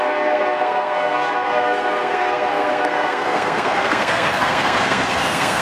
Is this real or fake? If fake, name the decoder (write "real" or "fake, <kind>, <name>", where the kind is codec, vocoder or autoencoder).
fake, codec, SNAC